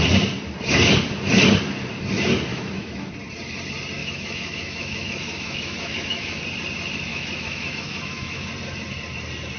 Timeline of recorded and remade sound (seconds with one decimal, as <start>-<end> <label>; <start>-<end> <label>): 0.0-2.5 recorded; 2.5-3.1 remade; 3.1-4.0 recorded; 4.0-6.4 remade; 6.4-7.1 recorded; 7.1-8.5 remade; 8.5-9.6 recorded